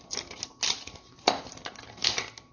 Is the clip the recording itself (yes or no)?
yes